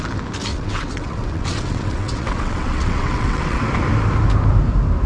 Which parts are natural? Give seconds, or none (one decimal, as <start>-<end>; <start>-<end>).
0.0-0.5; 3.6-5.1